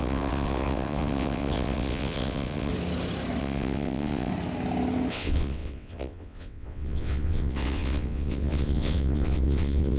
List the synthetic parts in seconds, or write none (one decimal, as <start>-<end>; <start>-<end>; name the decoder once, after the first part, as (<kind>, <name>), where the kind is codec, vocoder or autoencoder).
0.0-2.7 (vocoder, WaveNeXt); 3.4-4.3; 5.1-10.0